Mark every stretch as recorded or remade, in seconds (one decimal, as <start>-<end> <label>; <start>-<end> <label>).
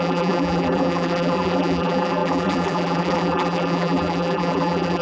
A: 0.0-5.0 remade